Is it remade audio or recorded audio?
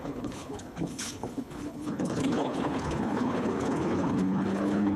remade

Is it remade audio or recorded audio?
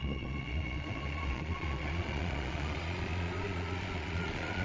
remade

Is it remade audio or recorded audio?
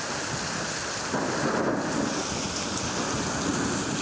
recorded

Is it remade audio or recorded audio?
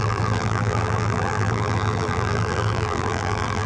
remade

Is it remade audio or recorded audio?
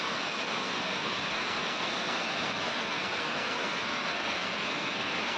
remade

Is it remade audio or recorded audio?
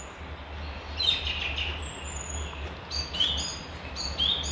recorded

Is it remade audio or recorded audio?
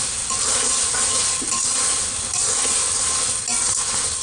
recorded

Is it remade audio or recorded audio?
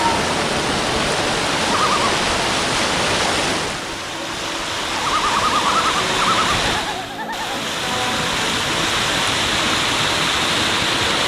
recorded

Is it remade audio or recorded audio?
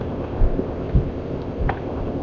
remade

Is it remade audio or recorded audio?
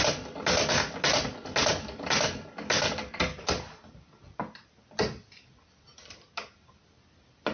recorded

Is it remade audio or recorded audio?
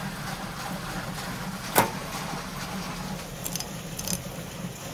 recorded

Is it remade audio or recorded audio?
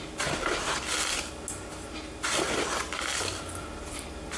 recorded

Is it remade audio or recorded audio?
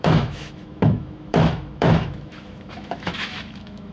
remade